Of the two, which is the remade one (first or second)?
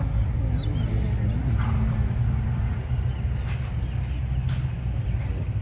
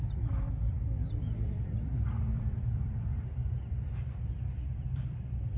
second